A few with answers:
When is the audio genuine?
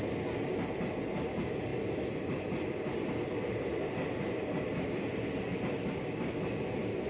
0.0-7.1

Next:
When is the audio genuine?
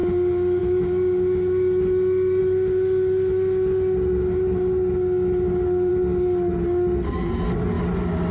0.0-8.3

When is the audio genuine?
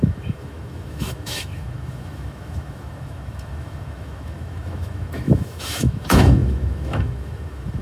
none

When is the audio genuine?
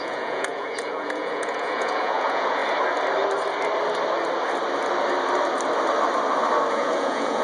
2.6-6.7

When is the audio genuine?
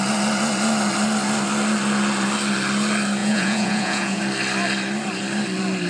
0.0-3.2; 4.2-5.9